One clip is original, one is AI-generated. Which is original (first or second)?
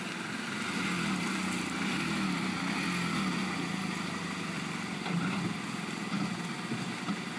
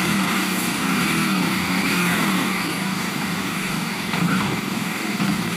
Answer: first